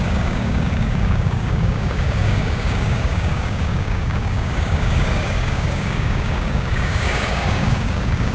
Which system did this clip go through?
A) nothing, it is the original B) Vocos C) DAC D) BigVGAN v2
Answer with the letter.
C